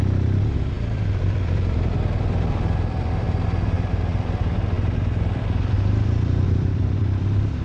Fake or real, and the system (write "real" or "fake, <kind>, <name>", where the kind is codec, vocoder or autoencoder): fake, vocoder, BigVGAN v2